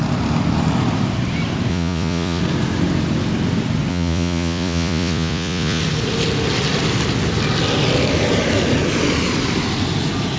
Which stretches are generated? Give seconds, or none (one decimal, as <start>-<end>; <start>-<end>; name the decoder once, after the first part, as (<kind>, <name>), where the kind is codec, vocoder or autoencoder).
1.7-2.4 (vocoder, Vocos); 3.9-5.8